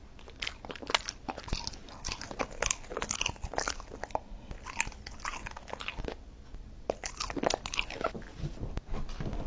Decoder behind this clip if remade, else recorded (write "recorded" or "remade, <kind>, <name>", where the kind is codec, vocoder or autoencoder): recorded